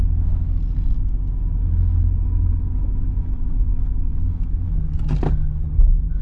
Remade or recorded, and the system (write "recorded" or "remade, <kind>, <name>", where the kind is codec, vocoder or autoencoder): recorded